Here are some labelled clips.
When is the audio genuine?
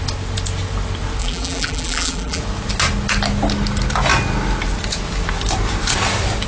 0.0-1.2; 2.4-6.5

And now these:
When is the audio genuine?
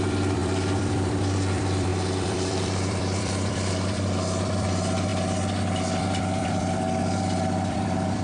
5.1-6.0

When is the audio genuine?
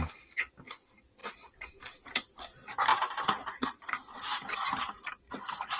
0.0-1.2; 1.7-2.9; 5.3-5.8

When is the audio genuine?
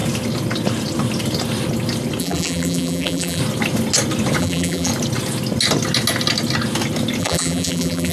0.0-2.2; 3.4-4.4; 4.9-7.2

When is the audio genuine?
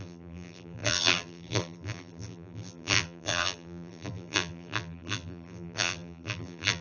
none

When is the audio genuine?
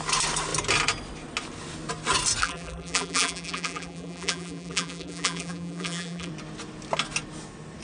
0.0-2.4; 6.3-7.8